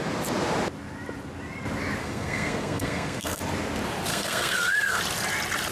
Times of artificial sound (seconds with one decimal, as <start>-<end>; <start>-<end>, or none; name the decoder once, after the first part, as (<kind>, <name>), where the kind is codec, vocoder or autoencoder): 2.0-3.4 (codec, SNAC); 4.1-5.0